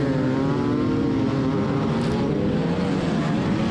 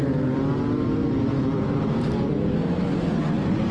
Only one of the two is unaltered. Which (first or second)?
first